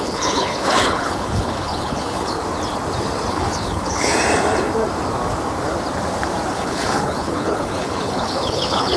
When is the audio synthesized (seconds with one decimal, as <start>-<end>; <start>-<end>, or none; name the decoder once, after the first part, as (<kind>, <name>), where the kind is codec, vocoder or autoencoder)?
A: 0.0-2.4 (codec, HILCodec); 3.3-4.1; 6.5-9.0